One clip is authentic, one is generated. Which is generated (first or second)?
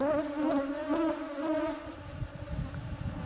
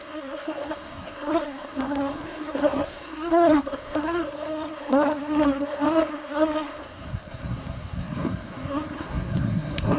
second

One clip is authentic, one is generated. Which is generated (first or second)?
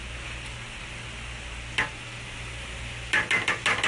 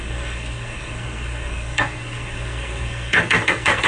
second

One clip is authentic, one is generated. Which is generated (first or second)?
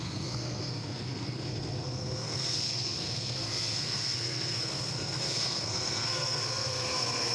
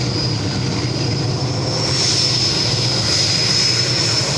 first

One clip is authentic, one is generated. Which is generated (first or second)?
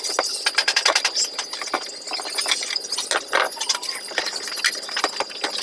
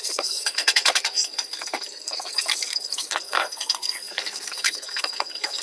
second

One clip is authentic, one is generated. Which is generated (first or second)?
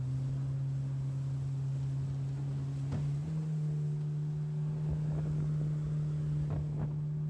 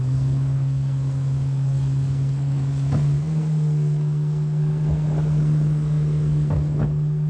second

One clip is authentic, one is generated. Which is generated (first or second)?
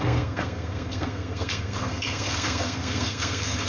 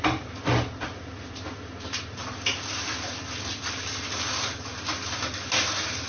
first